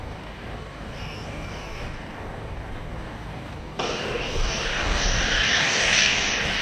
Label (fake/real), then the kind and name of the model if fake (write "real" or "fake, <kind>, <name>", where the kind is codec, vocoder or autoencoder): fake, codec, DAC